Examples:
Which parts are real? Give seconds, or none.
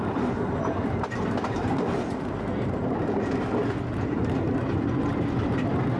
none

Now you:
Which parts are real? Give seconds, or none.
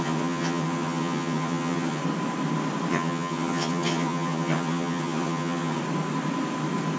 2.0-2.9; 5.8-7.0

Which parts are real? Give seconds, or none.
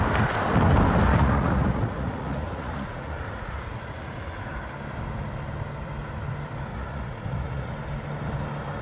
0.0-1.1; 4.2-6.7; 7.7-8.8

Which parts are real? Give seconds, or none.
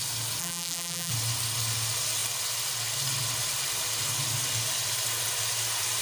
0.0-0.4; 1.1-6.0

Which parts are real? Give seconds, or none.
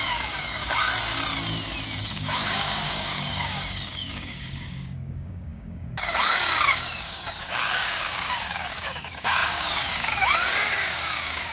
0.9-2.1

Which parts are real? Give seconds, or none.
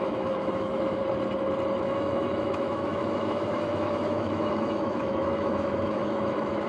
1.0-1.8